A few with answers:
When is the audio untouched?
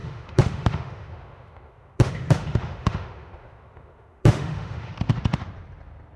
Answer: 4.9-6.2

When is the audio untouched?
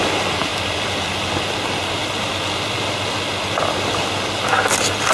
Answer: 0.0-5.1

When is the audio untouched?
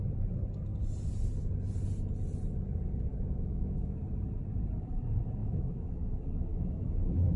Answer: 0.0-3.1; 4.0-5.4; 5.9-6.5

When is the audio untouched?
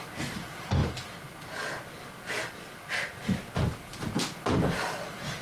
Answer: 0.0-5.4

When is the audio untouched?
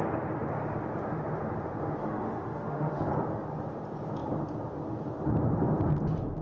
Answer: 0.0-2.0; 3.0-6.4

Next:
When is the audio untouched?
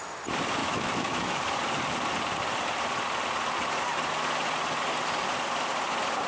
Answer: 0.0-0.6; 1.4-6.3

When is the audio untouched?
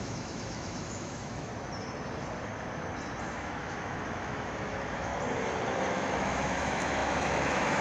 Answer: 1.5-3.2; 5.1-5.9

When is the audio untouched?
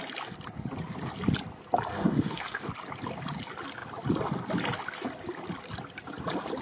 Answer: 0.0-1.9; 2.7-6.6